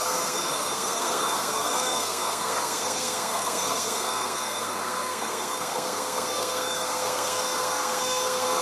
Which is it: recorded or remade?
remade